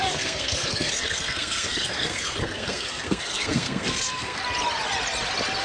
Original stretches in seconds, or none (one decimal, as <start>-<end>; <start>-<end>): 4.4-5.6